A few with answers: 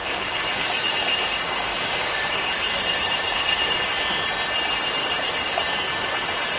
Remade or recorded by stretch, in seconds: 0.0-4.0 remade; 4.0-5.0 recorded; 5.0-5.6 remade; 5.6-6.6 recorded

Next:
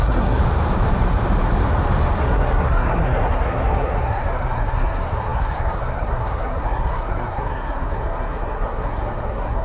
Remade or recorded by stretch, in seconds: 0.0-0.4 remade; 0.4-2.2 recorded; 2.2-9.6 remade

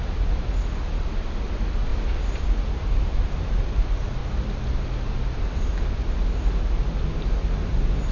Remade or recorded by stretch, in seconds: 0.0-1.9 remade; 1.9-2.4 recorded; 2.4-4.2 remade; 4.2-7.0 recorded; 7.0-8.1 remade

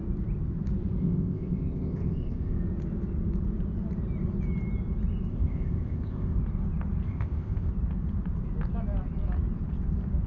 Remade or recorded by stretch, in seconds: 0.0-1.0 recorded; 1.0-2.6 remade; 2.6-5.3 recorded; 5.3-6.4 remade; 6.4-7.1 recorded; 7.1-7.7 remade; 7.7-10.3 recorded

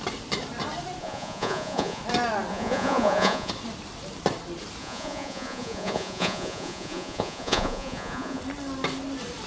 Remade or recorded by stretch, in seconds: 0.0-1.0 recorded; 1.0-2.0 remade; 2.0-2.5 recorded; 2.5-3.5 remade; 3.5-4.8 recorded; 4.8-8.4 remade; 8.4-9.5 recorded

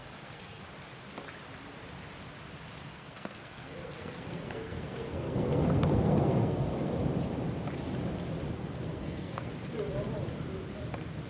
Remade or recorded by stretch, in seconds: 0.0-0.6 remade; 0.6-2.9 recorded; 2.9-6.9 remade; 6.9-8.6 recorded; 8.6-9.5 remade; 9.5-11.3 recorded

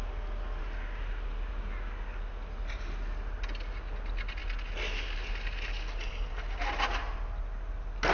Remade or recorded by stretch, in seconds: 0.0-8.1 recorded

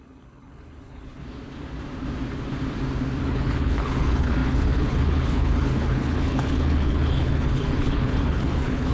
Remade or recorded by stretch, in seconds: 0.0-1.2 remade; 1.2-3.2 recorded; 3.2-8.9 remade